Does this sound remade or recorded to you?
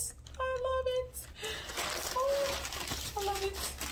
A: recorded